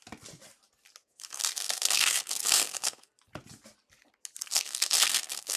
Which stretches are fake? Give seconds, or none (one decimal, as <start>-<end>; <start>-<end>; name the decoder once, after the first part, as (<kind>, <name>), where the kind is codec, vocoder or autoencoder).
1.0-3.1 (codec, SNAC); 4.5-5.6